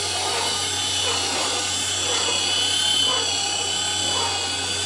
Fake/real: real